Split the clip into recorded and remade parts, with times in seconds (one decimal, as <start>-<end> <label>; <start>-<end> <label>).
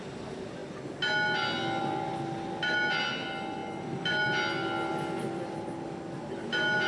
0.0-6.9 recorded